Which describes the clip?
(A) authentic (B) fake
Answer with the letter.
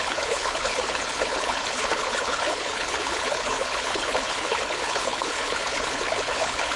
B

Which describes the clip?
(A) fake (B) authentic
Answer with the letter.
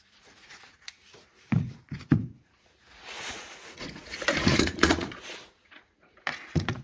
A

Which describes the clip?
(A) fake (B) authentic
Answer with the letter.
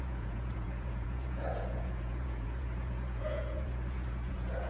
A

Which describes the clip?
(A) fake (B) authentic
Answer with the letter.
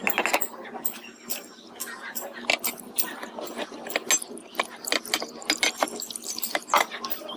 B